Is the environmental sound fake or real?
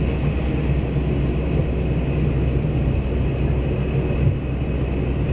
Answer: real